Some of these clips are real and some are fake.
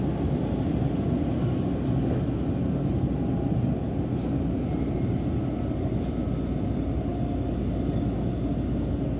real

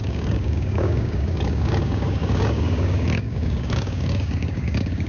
fake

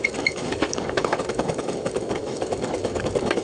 fake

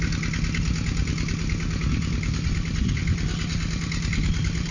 real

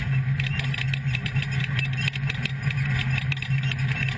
real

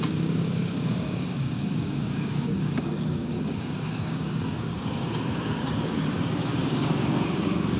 fake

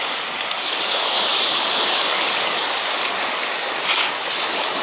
fake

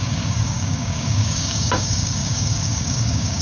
fake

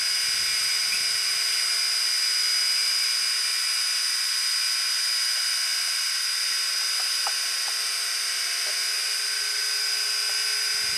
real